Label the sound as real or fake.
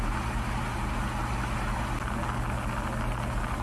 real